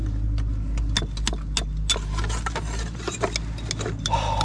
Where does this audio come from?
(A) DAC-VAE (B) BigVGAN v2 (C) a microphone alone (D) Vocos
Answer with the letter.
C